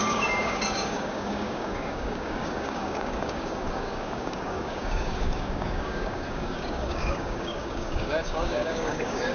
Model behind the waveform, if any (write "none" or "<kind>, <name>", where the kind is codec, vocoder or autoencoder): codec, DAC